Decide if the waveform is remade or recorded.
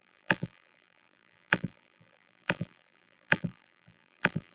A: remade